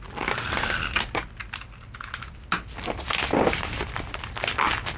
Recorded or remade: recorded